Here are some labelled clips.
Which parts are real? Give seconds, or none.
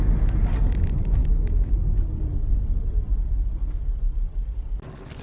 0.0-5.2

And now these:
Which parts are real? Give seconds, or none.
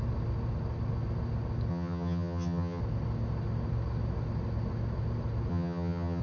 0.0-1.7; 2.8-5.5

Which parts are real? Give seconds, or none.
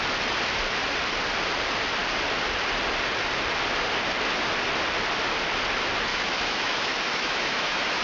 0.0-6.1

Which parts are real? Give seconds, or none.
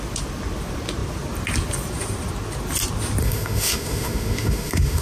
0.0-3.2